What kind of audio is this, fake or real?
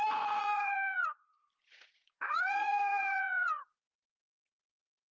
fake